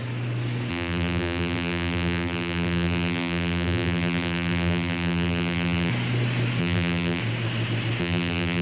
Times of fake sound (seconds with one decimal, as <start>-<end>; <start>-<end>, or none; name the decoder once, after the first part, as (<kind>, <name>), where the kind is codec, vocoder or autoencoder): 0.7-5.9 (vocoder, BigVGAN v2); 6.6-7.2; 8.0-8.6